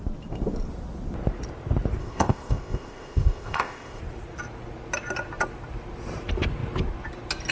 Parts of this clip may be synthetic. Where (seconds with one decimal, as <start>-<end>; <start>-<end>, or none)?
2.0-4.0